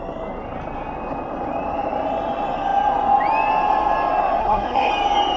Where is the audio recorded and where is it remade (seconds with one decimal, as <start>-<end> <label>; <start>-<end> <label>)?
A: 0.0-4.4 recorded; 4.4-4.9 remade; 4.9-5.4 recorded